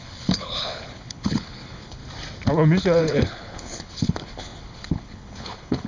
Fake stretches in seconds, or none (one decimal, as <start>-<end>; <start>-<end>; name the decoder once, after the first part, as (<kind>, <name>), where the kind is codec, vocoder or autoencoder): 0.0-2.0 (codec, HILCodec); 3.0-5.9